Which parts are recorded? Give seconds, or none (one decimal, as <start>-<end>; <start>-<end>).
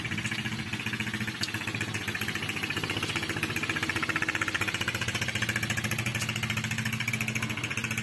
0.0-8.0